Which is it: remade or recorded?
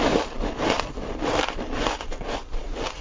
remade